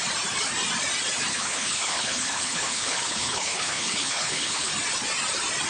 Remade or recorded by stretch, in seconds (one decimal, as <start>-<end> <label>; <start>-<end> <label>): 0.0-1.3 recorded; 1.3-4.7 remade; 4.7-5.7 recorded